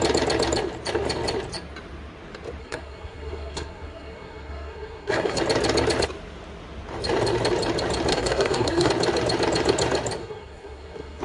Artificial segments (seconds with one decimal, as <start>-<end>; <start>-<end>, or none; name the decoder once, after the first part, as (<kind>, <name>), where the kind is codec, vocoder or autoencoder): 2.6-5.4 (codec, SNAC); 8.1-8.9; 10.2-11.2